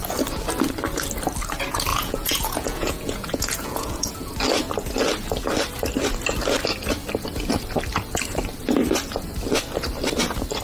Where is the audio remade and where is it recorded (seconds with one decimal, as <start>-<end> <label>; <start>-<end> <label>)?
0.0-1.9 recorded; 1.9-4.3 remade; 4.3-10.6 recorded